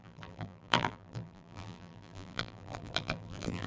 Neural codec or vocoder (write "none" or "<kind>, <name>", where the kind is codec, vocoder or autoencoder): vocoder, BigVGAN v2